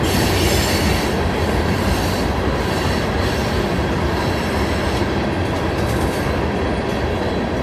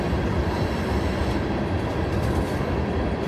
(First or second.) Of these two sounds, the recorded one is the first